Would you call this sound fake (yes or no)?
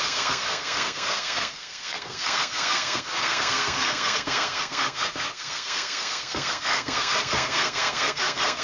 yes